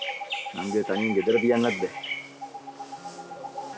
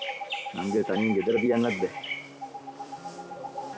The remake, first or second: second